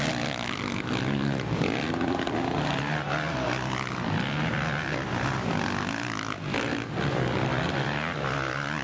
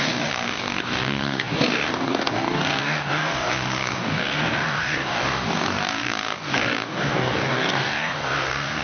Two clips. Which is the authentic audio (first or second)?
first